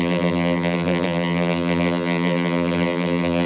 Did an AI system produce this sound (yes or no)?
yes